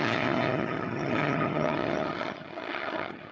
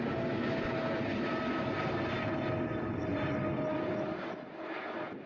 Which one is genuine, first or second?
second